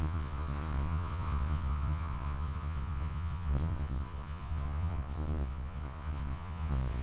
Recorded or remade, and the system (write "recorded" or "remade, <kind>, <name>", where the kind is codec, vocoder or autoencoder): remade, vocoder, Vocos